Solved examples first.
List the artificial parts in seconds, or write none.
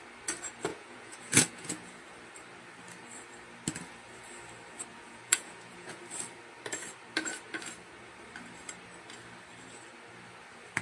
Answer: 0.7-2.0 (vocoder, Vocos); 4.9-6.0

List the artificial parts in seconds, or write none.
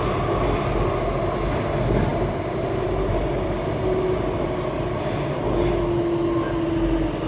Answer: none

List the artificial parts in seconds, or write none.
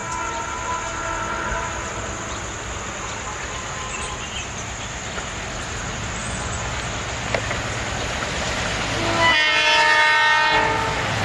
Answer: 6.2-6.7 (vocoder, Vocos)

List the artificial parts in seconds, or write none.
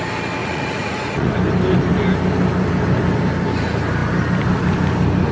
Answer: 0.4-1.3 (vocoder, Vocos)